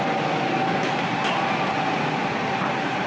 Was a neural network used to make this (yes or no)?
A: no